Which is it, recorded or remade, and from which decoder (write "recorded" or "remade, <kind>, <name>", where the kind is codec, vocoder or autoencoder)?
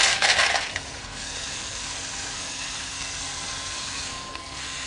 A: remade, codec, SNAC